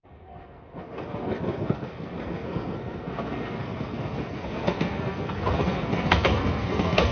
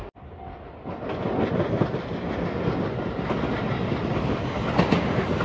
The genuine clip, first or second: second